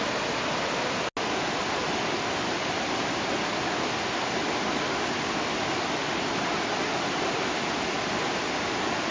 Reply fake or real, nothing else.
real